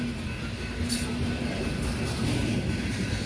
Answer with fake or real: real